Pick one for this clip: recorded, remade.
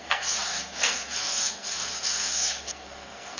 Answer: remade